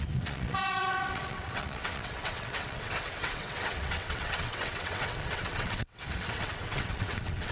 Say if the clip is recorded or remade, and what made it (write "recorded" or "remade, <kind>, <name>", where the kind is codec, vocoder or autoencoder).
remade, vocoder, WaveNeXt